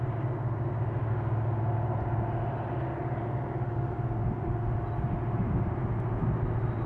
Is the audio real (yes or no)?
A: yes